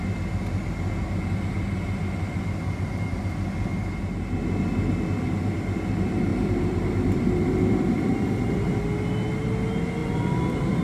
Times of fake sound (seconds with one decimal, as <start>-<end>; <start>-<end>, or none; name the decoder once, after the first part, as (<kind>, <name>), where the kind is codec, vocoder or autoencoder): 6.3-8.8 (vocoder, BigVGAN v2); 10.0-10.8